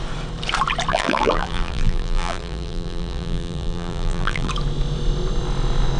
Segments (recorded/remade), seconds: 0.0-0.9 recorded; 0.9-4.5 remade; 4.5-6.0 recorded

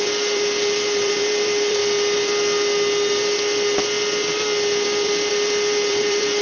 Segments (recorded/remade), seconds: 0.0-1.8 remade; 1.8-5.3 recorded; 5.3-6.4 remade

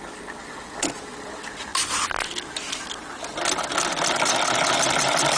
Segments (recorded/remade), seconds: 0.0-5.4 recorded

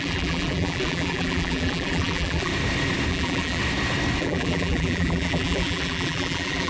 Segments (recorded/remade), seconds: 0.0-2.5 remade; 2.5-3.1 recorded; 3.1-3.6 remade; 3.6-4.2 recorded; 4.2-6.7 remade

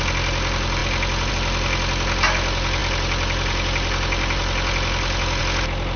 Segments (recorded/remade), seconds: 0.0-6.0 recorded

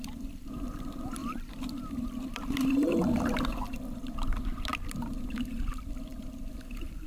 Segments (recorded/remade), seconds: 0.0-7.1 remade